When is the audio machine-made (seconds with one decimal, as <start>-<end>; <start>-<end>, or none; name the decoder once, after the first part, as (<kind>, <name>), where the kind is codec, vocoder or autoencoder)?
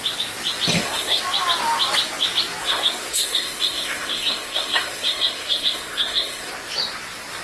0.7-1.2 (codec, SNAC); 2.6-6.5